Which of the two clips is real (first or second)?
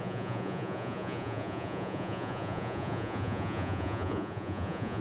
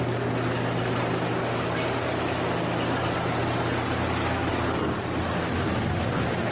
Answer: second